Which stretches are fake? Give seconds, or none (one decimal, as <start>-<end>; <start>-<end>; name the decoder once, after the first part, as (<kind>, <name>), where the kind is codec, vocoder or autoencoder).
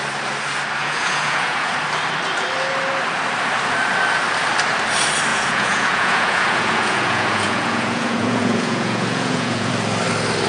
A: 0.8-1.7 (vocoder, Vocos); 5.3-9.7